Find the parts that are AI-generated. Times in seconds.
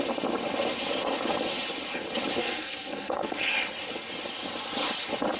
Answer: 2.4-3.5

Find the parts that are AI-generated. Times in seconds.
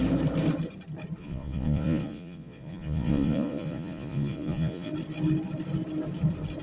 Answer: 1.2-4.9